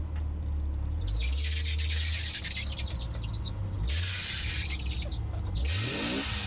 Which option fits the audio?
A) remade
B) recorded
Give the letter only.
B